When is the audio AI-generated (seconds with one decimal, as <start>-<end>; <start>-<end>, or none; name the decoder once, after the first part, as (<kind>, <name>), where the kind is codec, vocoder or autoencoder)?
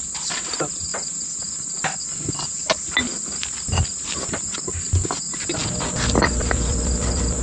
none